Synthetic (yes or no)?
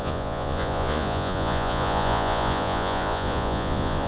yes